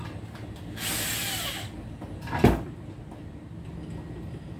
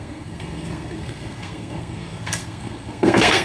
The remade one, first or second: second